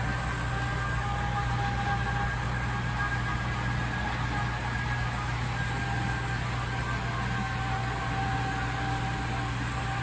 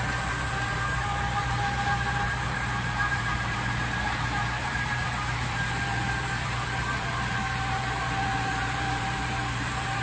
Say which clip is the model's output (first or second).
second